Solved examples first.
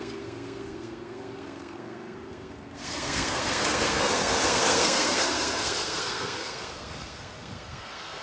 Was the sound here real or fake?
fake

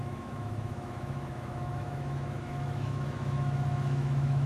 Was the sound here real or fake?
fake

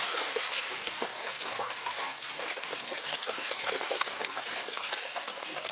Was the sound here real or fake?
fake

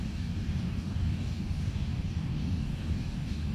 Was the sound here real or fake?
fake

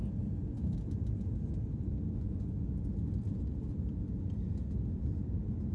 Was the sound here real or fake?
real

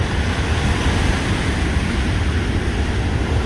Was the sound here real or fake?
real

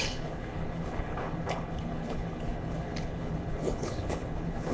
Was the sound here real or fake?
fake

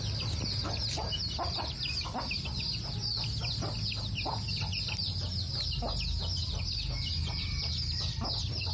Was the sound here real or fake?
real